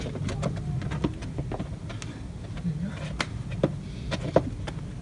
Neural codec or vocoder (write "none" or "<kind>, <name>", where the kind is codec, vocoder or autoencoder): none